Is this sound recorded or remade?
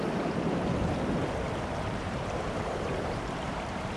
remade